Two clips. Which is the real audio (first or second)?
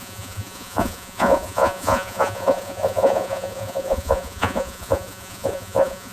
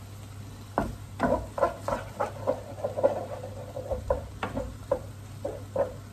second